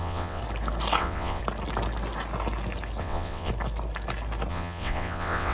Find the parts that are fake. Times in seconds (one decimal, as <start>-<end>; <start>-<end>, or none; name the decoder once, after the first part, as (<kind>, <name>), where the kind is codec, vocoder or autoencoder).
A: 0.0-0.4 (vocoder, WaveNeXt); 1.0-1.4; 3.0-3.5; 4.5-5.5